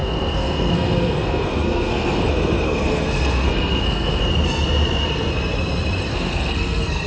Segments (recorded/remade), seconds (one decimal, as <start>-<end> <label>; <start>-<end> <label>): 0.0-4.3 remade; 4.3-6.1 recorded; 6.1-7.1 remade